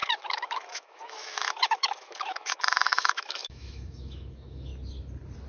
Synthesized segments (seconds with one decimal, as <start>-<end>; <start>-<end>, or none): 0.0-4.7